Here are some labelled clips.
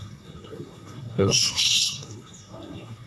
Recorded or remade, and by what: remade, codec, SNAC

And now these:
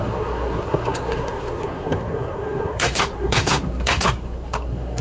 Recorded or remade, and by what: remade, codec, SNAC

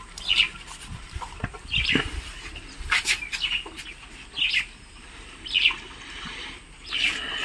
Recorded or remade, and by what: recorded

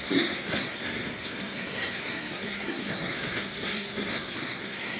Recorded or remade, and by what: remade, codec, SNAC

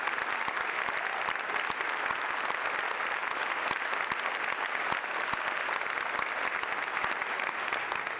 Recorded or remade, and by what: recorded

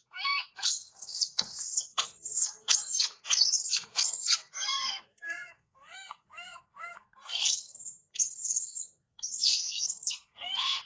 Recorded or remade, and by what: remade, codec, SNAC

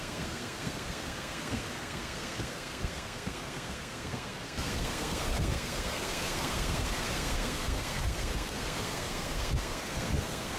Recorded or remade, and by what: remade, codec, SNAC